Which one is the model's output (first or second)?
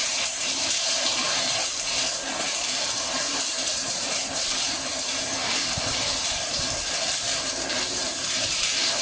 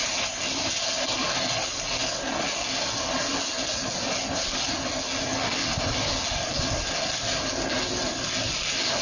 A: first